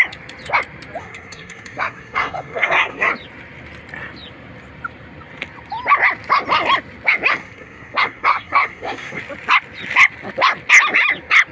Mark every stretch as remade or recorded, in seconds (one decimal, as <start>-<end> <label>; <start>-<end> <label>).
0.0-1.0 recorded; 1.0-3.1 remade; 3.1-7.3 recorded; 7.3-9.2 remade; 9.2-11.5 recorded